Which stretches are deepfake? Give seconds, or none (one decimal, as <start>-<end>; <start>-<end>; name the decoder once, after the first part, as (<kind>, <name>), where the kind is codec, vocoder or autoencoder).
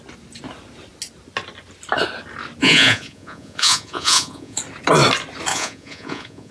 2.6-4.6 (vocoder, Vocos); 5.5-6.5